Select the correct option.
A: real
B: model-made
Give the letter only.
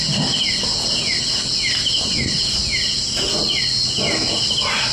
A